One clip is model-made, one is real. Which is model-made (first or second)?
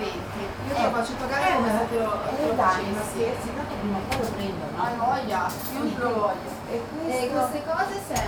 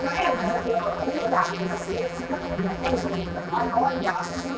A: second